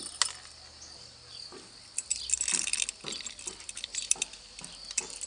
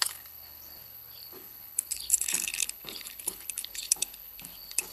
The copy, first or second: second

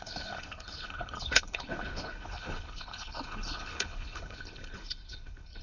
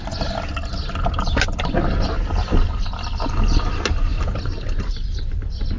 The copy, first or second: first